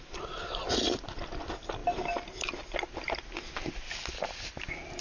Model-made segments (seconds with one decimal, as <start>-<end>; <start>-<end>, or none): none